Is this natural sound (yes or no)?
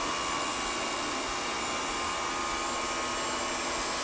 yes